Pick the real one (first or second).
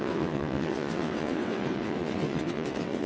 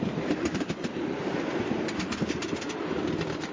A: second